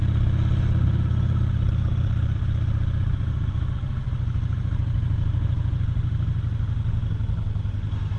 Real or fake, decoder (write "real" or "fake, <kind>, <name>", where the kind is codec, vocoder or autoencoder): real